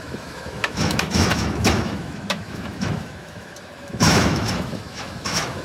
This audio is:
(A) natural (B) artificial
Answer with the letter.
B